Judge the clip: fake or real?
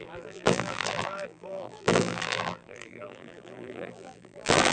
fake